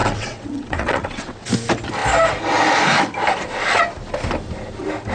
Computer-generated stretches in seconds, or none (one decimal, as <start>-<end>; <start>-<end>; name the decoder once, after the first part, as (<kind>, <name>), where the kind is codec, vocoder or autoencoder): 0.0-1.5 (vocoder, WaveNeXt)